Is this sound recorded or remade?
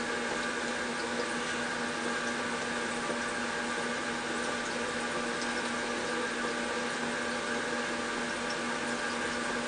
recorded